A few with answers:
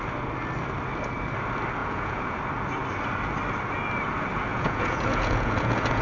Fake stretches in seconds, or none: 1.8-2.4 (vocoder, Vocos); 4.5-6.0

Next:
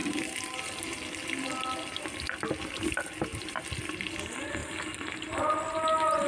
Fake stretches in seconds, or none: none

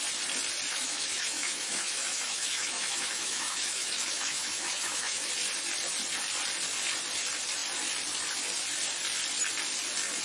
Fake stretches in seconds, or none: 0.7-5.3 (autoencoder, DAC-VAE)